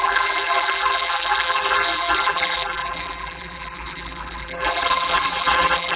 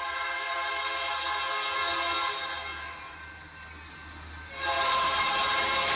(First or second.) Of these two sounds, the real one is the second